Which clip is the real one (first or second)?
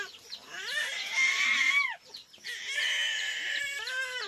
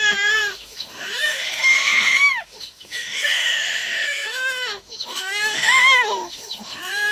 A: first